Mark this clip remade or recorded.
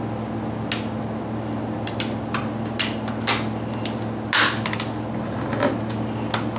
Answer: recorded